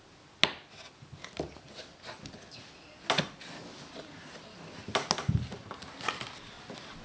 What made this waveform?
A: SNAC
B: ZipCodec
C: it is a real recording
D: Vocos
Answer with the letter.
C